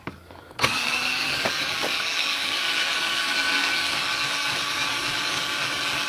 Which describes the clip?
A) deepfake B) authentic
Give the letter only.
A